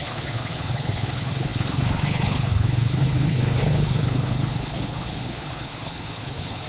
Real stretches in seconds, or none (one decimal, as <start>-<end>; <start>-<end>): none